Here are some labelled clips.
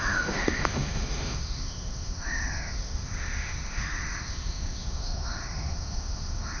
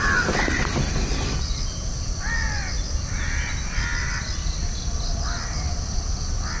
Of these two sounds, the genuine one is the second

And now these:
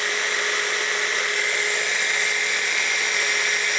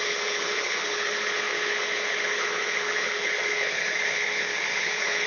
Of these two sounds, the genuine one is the first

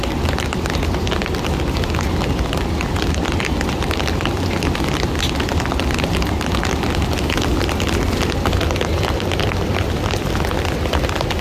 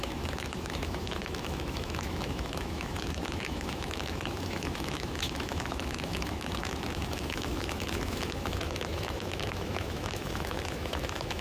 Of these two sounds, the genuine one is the first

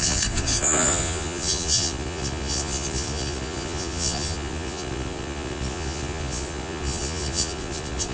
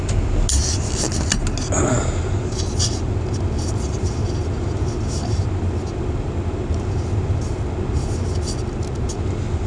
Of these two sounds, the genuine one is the second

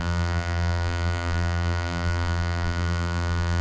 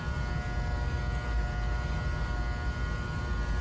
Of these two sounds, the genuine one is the second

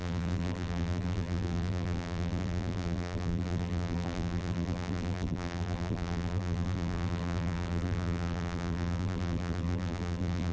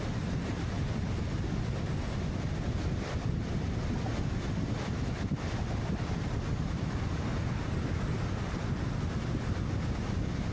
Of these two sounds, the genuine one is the second